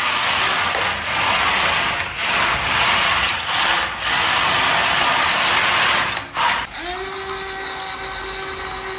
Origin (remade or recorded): recorded